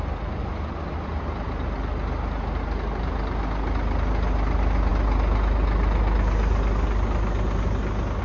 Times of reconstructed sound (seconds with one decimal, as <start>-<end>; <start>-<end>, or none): none